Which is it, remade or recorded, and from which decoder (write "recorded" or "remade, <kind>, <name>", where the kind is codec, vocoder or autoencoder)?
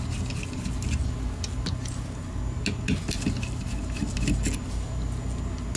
recorded